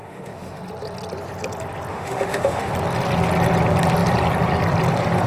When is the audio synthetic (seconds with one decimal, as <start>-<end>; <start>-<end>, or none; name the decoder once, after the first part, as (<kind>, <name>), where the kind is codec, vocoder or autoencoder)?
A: 0.0-0.6 (autoencoder, DAC-VAE); 1.9-2.7